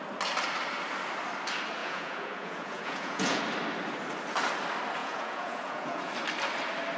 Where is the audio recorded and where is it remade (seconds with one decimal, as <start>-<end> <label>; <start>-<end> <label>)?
0.0-1.8 recorded; 1.8-3.4 remade; 3.4-5.0 recorded; 5.0-6.1 remade; 6.1-7.0 recorded